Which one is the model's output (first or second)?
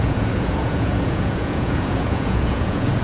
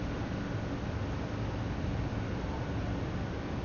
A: first